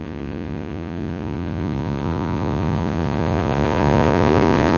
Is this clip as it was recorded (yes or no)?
no